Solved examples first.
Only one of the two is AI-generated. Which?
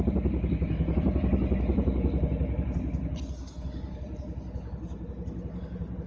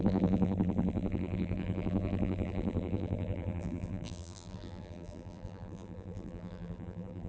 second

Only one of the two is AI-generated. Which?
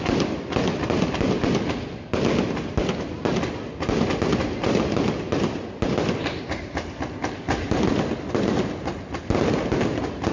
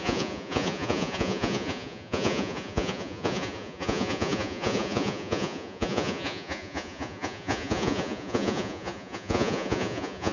second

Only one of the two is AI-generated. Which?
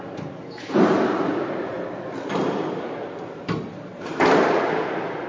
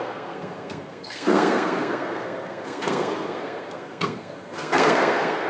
second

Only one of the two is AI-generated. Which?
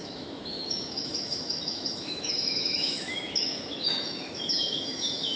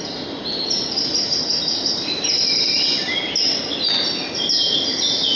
first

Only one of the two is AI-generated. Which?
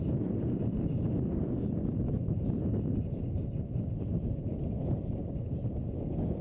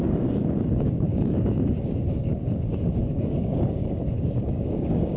second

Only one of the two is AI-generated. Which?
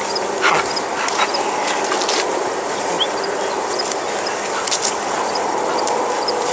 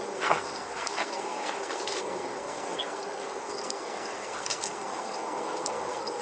second